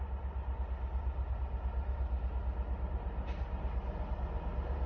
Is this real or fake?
real